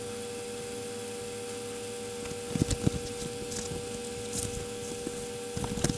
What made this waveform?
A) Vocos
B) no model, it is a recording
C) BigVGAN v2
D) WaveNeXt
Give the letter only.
B